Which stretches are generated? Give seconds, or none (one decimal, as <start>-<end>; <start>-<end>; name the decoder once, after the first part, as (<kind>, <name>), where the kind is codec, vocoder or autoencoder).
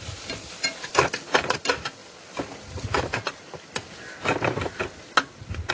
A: none